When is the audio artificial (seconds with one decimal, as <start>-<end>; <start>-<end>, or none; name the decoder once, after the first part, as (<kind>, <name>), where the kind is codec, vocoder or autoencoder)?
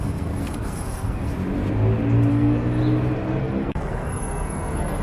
0.0-1.3 (codec, SNAC); 2.3-2.8; 3.4-5.0